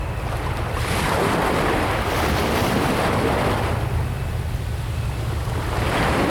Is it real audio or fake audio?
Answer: real